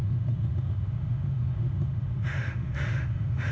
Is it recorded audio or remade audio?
remade